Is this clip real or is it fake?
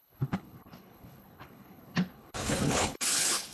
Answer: fake